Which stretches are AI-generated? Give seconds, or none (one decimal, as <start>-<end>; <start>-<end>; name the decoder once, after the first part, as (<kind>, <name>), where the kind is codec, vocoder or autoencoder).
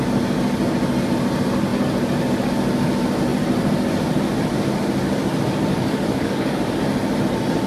5.7-6.7 (codec, DAC)